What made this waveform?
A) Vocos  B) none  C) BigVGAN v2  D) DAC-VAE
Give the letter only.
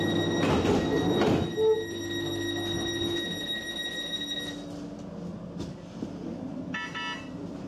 B